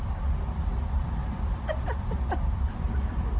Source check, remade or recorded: recorded